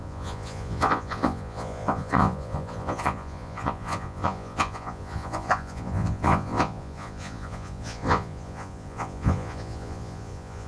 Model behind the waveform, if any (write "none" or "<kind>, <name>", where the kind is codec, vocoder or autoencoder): vocoder, Vocos